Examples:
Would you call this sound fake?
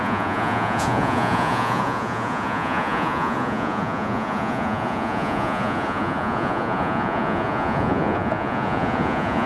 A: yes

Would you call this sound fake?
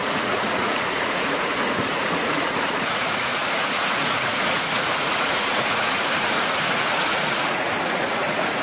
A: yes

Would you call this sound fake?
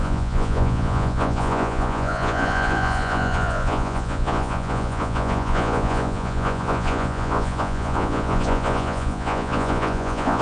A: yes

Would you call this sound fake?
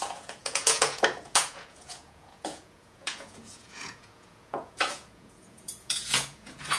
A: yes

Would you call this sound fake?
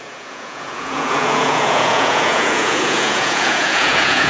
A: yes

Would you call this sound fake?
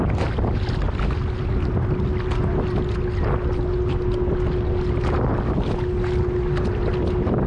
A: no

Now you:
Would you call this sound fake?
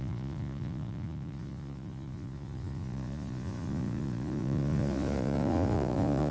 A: yes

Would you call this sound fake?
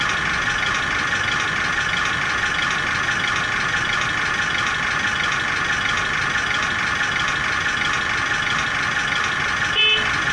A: no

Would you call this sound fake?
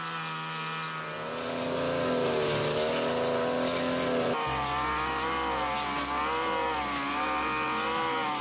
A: no